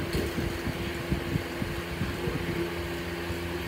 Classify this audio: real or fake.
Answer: real